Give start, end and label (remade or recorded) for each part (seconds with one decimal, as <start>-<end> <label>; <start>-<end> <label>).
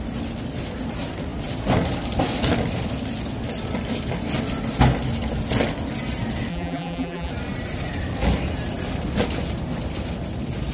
0.0-6.5 recorded; 6.5-7.3 remade; 7.3-10.7 recorded